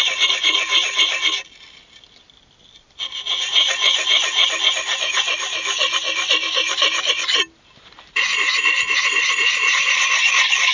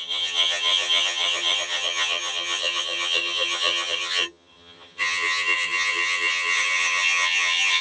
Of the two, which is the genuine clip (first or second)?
first